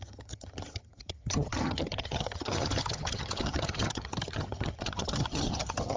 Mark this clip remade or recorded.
remade